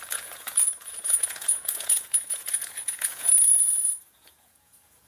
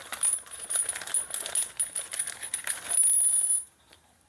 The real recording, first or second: second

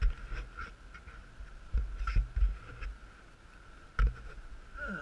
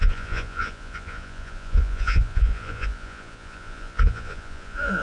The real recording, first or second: first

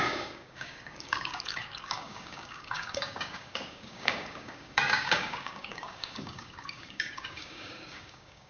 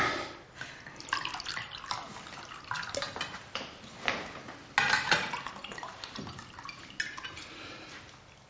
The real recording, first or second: second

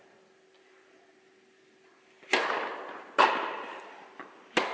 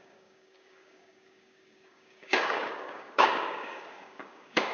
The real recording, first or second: first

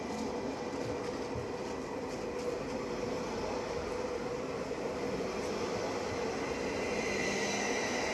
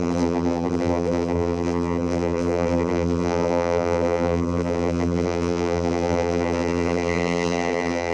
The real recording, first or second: first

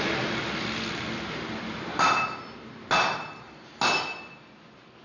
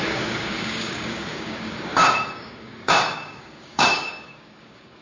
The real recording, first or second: first